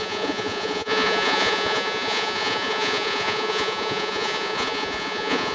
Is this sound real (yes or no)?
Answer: no